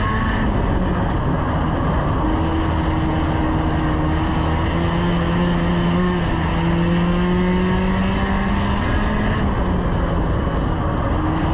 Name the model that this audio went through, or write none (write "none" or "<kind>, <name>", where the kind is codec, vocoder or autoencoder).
none